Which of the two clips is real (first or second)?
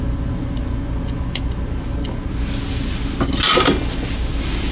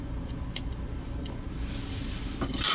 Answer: first